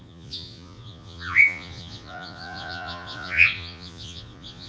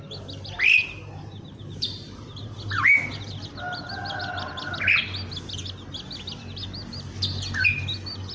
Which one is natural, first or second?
second